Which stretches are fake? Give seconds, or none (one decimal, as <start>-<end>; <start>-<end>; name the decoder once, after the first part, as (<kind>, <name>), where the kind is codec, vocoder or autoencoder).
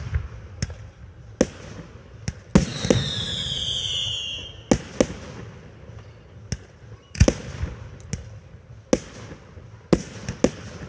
none